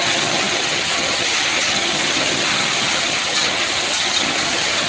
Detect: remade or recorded remade